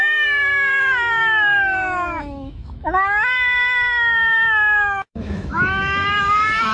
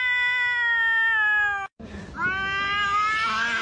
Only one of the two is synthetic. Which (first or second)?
first